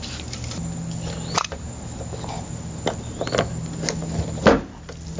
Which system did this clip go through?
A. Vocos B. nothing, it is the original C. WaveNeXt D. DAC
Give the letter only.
B